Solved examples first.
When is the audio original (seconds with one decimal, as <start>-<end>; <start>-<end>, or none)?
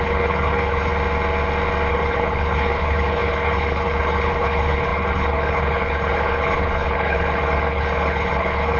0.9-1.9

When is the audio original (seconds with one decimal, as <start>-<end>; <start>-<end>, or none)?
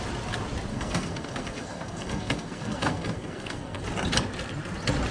0.0-0.7; 3.8-5.1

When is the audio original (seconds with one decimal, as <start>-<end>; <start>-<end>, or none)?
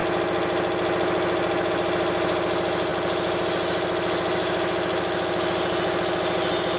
0.0-6.8